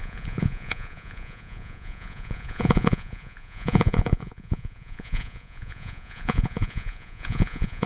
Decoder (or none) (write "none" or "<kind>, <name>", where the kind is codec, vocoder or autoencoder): vocoder, Vocos